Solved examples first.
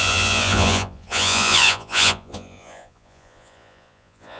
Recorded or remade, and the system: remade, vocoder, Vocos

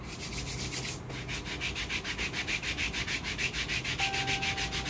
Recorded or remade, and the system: recorded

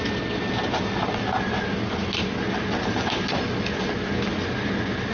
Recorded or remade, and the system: recorded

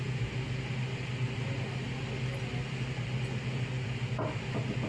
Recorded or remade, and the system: recorded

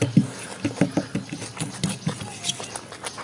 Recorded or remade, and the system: recorded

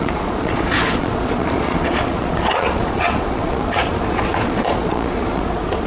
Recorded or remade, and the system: remade, vocoder, Vocos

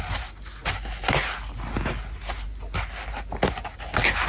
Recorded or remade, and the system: recorded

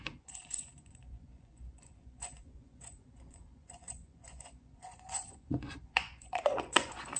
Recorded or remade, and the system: remade, vocoder, Vocos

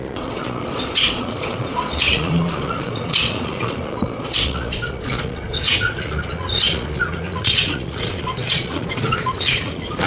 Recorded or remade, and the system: remade, vocoder, Vocos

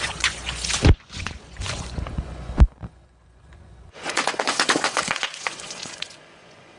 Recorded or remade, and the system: remade, vocoder, Vocos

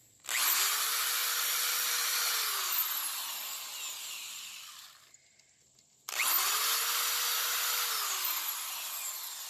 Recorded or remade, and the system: recorded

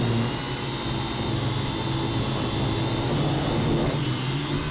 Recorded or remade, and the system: recorded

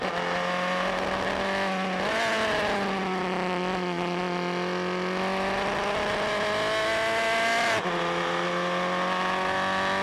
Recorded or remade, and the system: recorded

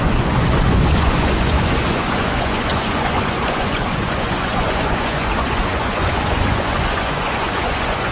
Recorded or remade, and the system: remade, vocoder, Vocos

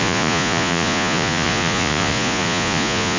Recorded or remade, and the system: remade, vocoder, Vocos